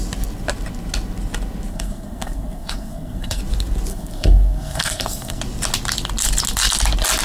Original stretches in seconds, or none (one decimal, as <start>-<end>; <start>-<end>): 0.0-1.7; 3.4-3.9; 5.4-7.2